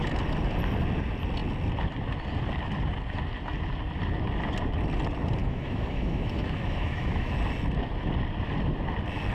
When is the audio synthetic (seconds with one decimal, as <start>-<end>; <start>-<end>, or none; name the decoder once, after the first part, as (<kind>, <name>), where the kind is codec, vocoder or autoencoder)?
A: 5.4-7.3 (autoencoder, DAC-VAE)